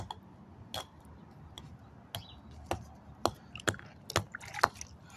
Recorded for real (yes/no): yes